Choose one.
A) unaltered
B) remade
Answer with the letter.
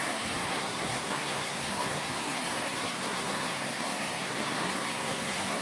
B